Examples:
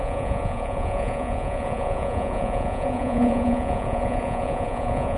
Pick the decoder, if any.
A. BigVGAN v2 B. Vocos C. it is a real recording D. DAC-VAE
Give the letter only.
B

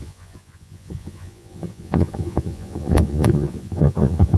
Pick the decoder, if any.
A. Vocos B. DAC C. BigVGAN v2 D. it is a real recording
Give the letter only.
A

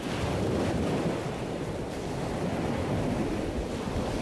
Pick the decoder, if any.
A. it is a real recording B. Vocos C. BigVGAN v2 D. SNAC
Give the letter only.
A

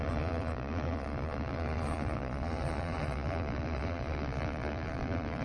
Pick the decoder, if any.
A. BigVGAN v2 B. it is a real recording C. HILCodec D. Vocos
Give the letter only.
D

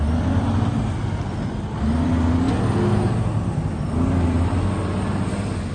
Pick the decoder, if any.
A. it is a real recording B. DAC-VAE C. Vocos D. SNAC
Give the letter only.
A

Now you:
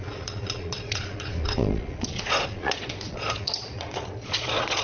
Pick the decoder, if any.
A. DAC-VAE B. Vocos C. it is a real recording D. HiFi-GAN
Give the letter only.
B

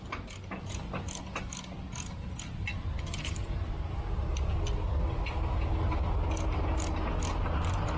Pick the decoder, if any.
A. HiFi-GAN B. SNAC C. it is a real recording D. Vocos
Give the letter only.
C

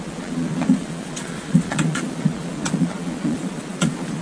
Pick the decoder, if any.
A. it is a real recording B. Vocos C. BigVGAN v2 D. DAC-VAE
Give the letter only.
B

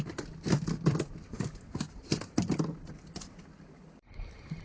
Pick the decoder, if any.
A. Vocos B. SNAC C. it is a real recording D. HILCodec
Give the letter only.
C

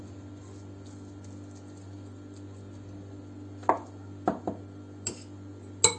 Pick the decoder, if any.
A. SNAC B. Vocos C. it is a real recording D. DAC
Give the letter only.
C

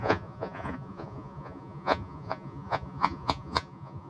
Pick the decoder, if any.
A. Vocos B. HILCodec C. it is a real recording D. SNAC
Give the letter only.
A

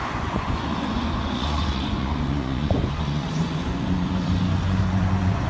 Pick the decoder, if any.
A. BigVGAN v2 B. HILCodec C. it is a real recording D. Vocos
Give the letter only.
D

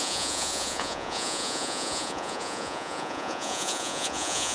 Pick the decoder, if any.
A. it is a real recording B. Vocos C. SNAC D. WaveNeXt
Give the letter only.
B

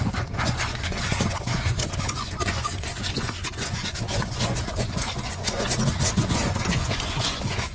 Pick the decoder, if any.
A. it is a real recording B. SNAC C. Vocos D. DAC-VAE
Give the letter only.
C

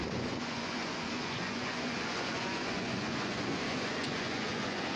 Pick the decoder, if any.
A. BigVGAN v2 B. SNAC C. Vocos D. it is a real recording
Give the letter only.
C